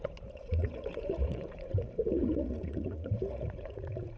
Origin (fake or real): fake